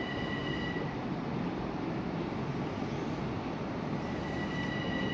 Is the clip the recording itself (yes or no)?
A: yes